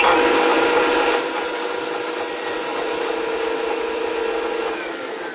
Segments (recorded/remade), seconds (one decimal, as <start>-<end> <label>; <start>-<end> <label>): 0.0-0.5 recorded; 0.5-1.6 remade; 1.6-5.3 recorded